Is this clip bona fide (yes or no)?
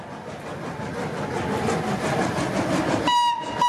yes